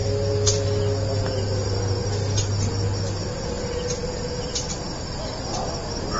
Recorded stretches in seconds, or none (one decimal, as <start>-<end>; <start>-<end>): 0.0-6.2